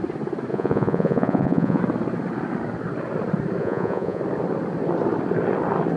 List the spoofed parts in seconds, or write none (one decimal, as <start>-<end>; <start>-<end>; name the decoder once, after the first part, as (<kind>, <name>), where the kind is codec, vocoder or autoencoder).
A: 0.5-1.8 (vocoder, Vocos); 3.6-4.2